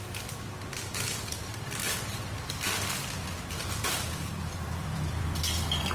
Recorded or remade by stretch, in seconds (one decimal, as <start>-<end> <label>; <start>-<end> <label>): 0.0-5.9 remade